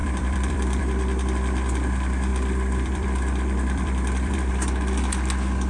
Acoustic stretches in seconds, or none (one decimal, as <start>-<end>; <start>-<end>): 0.8-2.3; 4.5-5.7